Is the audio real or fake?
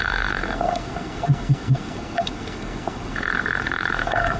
fake